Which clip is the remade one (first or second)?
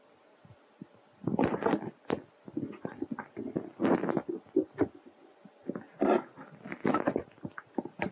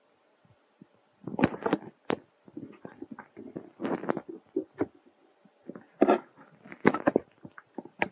second